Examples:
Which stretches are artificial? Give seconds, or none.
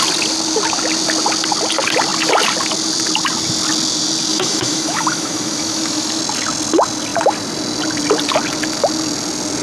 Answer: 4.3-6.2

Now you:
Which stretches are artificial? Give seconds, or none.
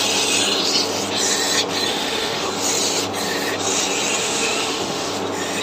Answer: 1.9-2.5; 4.2-5.1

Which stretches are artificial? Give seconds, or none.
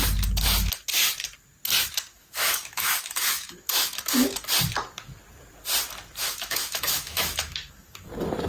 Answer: 2.1-4.1; 6.2-8.1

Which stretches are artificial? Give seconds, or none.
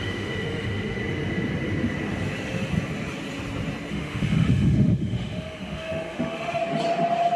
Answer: 0.0-1.0; 3.9-6.6